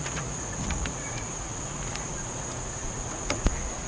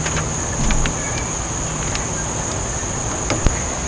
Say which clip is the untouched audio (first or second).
second